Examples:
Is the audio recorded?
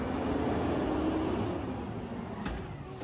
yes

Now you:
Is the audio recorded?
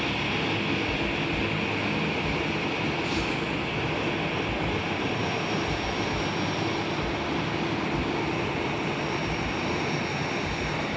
yes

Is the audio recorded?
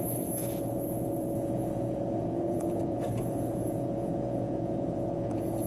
no